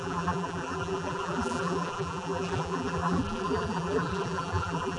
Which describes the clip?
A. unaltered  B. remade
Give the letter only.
B